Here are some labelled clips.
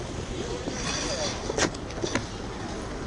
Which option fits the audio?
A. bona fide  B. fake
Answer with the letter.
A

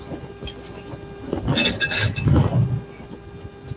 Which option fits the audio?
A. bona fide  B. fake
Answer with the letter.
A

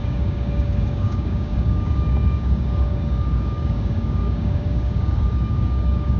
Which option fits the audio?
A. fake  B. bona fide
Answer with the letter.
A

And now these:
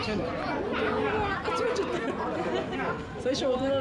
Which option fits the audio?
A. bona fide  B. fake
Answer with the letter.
A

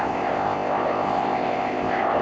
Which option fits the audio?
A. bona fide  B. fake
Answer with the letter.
B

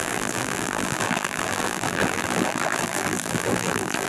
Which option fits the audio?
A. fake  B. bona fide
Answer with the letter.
A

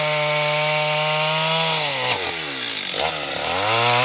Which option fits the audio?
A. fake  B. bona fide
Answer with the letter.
B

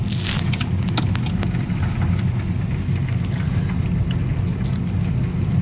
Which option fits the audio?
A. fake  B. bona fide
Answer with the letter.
B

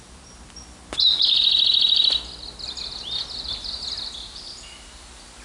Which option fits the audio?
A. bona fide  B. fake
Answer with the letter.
A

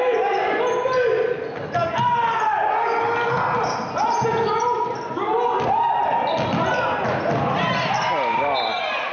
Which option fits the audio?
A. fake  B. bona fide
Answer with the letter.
B